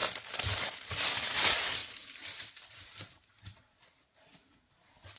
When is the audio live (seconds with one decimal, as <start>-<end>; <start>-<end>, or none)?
0.0-1.8; 4.8-5.2

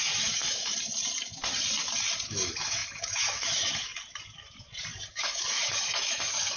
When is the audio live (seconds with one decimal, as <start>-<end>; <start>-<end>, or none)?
0.7-2.3; 3.9-5.1

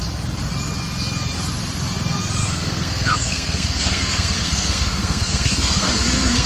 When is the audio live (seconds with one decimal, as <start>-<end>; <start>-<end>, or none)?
0.0-2.4

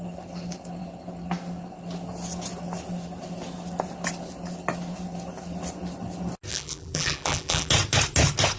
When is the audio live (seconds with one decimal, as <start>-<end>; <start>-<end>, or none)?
0.0-6.5; 7.7-8.6